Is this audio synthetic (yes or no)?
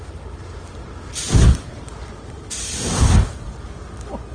no